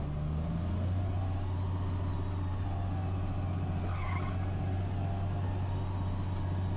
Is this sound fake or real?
real